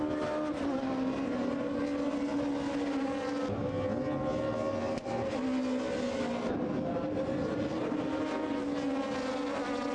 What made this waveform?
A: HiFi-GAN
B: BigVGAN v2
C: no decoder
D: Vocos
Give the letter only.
C